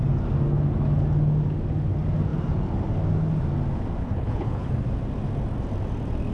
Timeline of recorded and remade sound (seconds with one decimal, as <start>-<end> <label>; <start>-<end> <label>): 0.0-4.0 recorded; 4.0-4.7 remade; 4.7-6.3 recorded